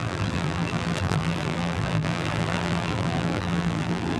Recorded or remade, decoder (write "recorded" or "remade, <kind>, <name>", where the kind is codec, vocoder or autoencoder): remade, vocoder, BigVGAN v2